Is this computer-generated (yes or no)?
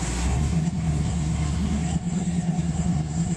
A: yes